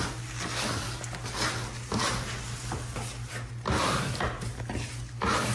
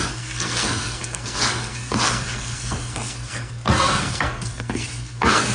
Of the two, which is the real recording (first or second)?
first